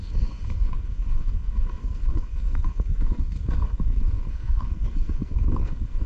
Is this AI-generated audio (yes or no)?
yes